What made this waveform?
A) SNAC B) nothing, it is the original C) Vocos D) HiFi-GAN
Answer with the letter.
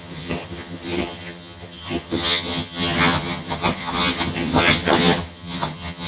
D